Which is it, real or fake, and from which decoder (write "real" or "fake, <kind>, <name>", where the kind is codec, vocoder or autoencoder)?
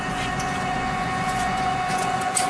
fake, vocoder, Vocos